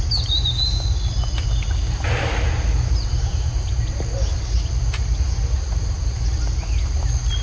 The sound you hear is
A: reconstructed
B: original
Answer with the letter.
B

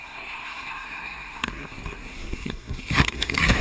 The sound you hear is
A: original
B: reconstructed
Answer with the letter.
B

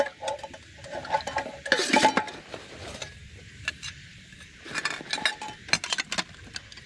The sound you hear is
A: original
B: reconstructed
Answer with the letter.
A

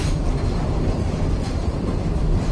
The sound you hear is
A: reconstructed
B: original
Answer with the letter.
A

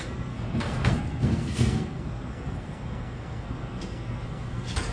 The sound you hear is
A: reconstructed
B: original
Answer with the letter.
A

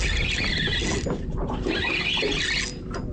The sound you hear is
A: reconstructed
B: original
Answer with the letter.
B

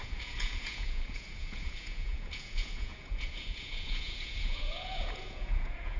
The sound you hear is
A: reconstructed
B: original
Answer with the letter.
A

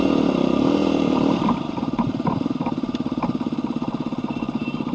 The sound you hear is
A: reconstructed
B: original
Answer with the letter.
A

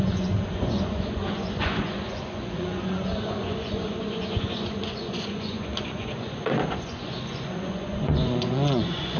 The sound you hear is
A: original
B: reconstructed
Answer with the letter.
B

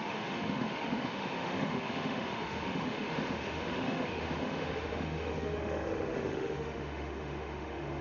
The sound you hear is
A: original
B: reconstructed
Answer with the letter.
B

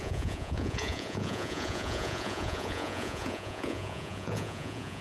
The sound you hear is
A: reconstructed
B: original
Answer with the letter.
A